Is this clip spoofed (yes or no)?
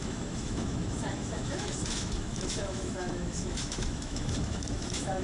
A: yes